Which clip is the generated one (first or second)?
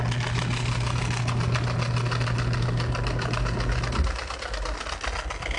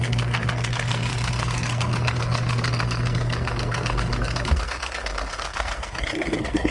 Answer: second